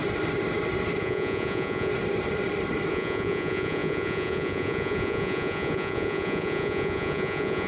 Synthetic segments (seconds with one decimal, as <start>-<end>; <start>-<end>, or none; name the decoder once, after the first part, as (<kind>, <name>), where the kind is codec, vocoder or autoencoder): 1.0-1.9 (vocoder, Vocos); 2.9-7.7